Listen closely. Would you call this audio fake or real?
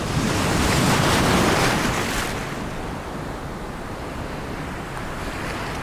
real